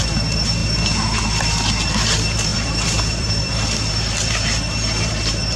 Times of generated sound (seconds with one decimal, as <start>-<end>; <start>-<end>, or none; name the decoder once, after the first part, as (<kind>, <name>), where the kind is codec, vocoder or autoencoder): 2.5-3.5 (vocoder, BigVGAN v2)